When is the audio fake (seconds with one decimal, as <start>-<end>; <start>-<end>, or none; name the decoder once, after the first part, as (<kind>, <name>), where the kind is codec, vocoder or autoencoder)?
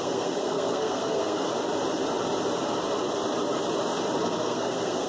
0.0-1.5 (codec, SNAC); 4.2-5.1